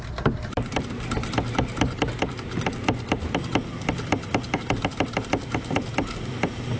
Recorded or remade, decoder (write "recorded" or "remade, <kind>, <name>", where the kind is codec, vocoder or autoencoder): remade, vocoder, BigVGAN v2